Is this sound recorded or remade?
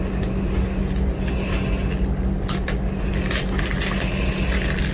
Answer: recorded